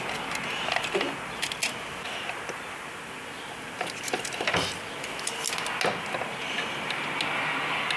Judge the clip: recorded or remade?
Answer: recorded